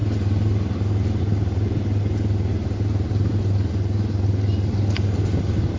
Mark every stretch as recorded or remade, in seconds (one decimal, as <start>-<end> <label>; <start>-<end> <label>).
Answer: 0.0-5.8 recorded